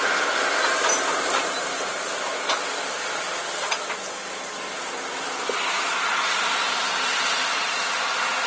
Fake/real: real